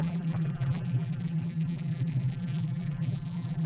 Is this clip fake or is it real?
fake